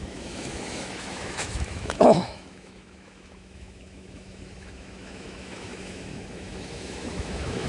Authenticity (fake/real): fake